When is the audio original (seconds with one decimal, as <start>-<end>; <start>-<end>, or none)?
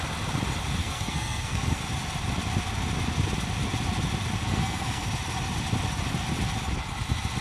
0.0-0.8; 1.8-4.4; 5.1-7.4